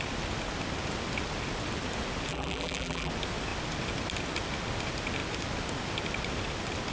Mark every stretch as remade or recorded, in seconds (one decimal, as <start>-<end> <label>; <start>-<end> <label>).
0.0-2.3 recorded; 2.3-3.1 remade; 3.1-6.9 recorded